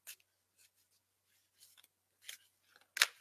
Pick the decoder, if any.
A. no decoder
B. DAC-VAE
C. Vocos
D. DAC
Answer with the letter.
A